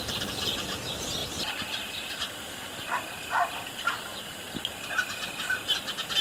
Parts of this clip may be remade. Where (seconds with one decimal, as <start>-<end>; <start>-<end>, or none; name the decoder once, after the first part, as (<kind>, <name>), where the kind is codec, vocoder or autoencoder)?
1.2-4.2 (vocoder, BigVGAN v2)